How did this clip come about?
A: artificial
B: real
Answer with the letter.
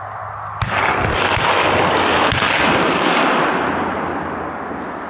B